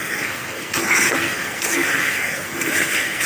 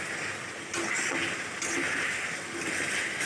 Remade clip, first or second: first